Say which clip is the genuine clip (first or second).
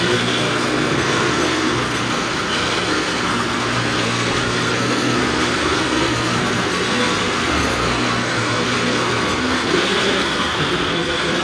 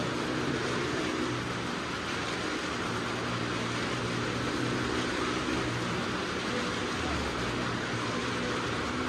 second